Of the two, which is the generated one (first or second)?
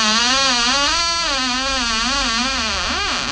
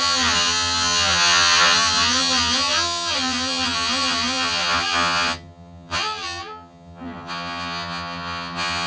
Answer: second